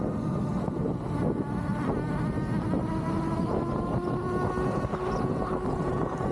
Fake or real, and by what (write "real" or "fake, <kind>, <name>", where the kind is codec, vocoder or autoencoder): real